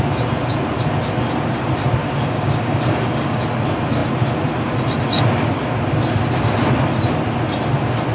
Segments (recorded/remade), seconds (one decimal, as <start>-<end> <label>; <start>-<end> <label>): 0.0-2.0 recorded; 2.0-3.4 remade; 3.4-8.1 recorded